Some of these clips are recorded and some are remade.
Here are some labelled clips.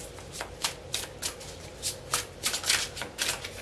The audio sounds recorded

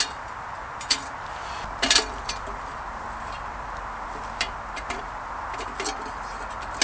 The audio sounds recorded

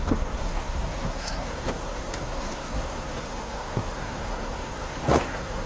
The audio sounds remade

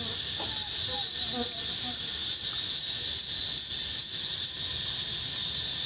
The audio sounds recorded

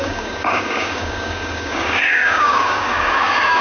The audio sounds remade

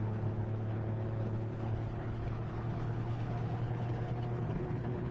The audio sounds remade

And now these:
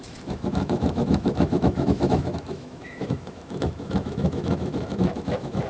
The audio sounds remade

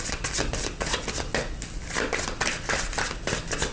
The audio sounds recorded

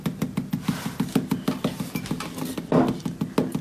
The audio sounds recorded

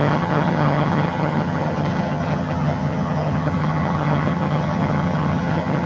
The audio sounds remade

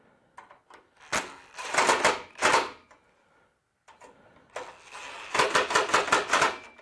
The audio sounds recorded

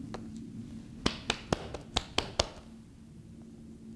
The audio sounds recorded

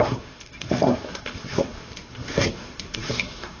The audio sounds remade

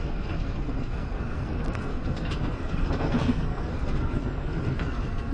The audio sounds remade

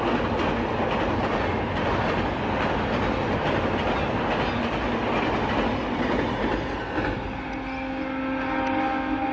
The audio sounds recorded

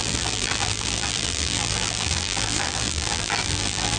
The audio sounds remade